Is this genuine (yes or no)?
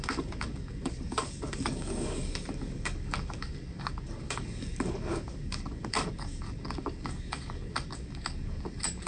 no